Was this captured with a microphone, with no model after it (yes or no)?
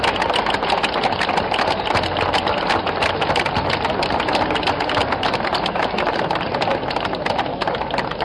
yes